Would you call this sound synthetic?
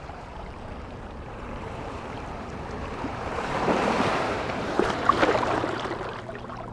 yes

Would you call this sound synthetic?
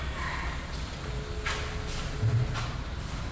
no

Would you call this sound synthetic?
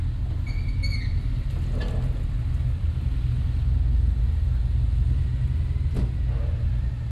no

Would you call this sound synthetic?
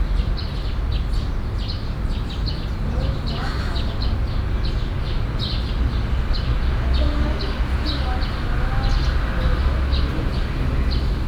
no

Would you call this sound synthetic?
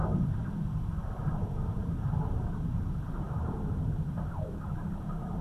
yes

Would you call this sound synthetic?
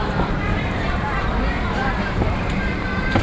yes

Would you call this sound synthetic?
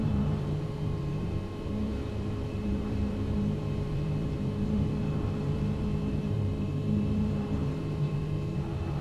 yes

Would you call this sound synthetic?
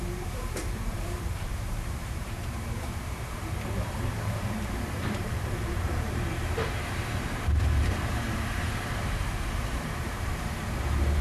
yes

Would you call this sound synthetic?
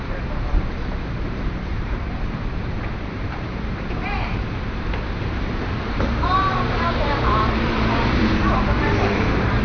yes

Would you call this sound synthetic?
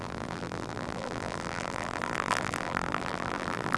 yes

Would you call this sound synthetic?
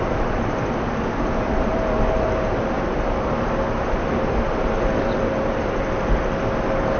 yes